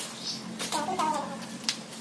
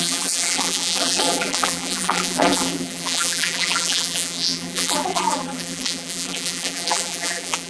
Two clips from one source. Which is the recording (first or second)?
first